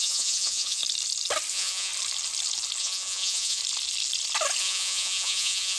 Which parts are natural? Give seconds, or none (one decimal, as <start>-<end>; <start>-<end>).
0.8-1.5; 1.9-2.8; 3.6-4.6